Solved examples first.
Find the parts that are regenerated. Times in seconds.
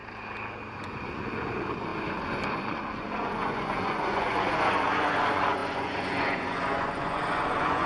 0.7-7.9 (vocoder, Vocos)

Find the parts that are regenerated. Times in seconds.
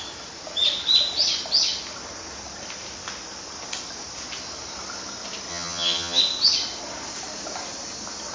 5.5-6.2 (vocoder, HiFi-GAN)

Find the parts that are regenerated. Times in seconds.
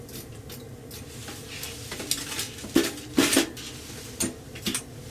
none